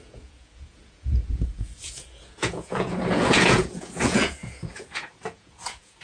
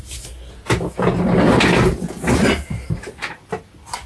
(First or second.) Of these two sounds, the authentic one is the second